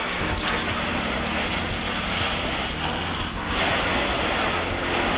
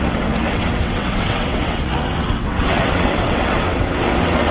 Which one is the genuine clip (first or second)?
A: first